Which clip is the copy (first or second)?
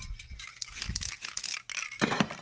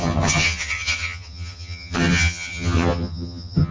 second